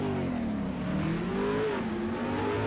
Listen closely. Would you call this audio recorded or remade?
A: recorded